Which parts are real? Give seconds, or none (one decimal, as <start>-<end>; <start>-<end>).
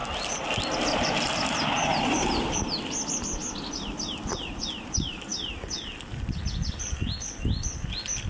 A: 0.0-8.3